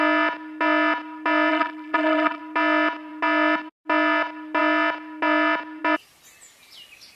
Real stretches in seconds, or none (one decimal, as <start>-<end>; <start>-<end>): 0.0-1.5; 2.4-7.2